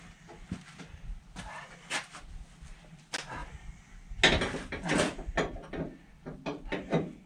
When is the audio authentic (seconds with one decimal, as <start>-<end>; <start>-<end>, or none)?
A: 0.0-7.3